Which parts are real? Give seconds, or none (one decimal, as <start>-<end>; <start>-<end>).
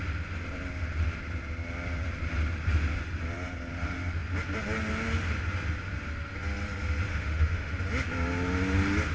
0.0-7.1; 7.7-9.1